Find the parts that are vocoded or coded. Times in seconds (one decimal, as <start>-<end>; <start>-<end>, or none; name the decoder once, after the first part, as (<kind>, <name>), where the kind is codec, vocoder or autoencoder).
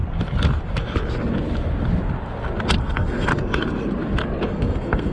2.8-3.3 (codec, SNAC); 4.5-5.1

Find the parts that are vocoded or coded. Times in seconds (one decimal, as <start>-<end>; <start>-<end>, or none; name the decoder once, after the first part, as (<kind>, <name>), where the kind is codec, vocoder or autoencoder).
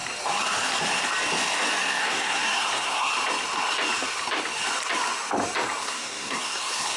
2.0-3.1 (codec, SNAC); 5.8-7.0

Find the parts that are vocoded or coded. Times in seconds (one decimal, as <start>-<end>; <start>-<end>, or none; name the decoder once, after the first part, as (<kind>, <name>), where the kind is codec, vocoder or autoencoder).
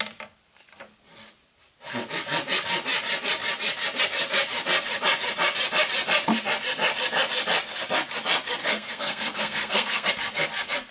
8.6-10.1 (codec, SNAC)